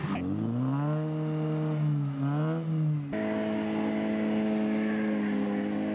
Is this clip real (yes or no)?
yes